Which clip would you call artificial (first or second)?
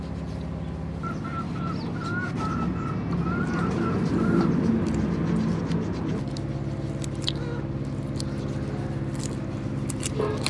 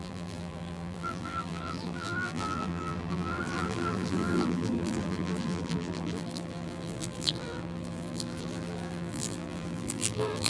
second